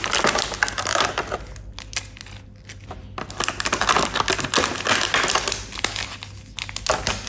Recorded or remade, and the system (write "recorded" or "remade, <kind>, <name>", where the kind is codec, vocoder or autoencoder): recorded